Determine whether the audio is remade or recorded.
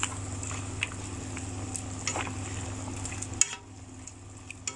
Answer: recorded